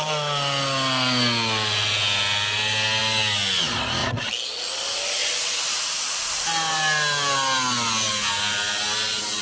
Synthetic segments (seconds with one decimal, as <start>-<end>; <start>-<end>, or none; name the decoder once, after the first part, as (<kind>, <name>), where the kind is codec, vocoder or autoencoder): none

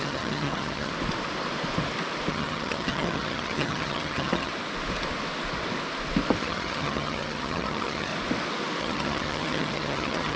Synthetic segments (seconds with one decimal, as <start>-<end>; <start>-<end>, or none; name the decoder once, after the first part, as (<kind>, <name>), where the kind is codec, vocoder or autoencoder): 0.0-0.9 (vocoder, HiFi-GAN); 2.3-4.5; 6.4-8.1; 8.8-10.4

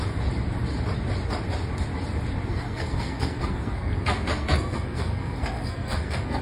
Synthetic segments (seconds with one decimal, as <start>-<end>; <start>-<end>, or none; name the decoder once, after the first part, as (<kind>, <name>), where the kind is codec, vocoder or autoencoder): 2.5-6.4 (codec, SNAC)

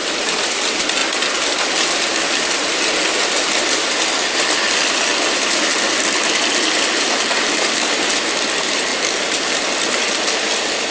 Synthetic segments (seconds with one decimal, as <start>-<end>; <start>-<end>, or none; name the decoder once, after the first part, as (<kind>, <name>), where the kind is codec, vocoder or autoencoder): none

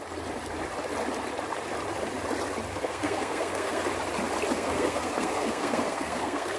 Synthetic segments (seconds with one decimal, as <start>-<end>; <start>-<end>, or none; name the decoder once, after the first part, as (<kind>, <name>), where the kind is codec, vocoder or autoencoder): 2.7-3.8 (codec, SNAC); 4.5-6.6

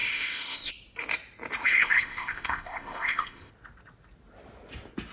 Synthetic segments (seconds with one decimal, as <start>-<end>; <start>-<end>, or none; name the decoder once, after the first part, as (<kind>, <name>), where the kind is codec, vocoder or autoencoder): 0.0-0.7 (codec, ZipCodec); 1.6-3.5

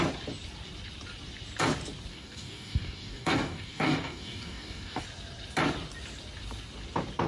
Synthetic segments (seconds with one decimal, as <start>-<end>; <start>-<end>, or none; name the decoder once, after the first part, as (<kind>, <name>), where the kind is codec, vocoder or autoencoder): 2.1-5.0 (codec, DAC)